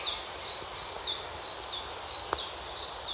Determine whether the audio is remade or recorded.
recorded